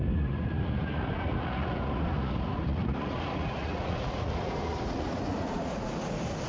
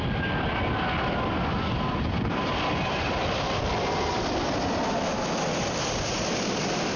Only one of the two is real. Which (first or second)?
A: second